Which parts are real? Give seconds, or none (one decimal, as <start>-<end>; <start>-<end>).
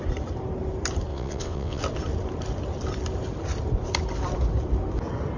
0.0-1.1; 1.8-5.4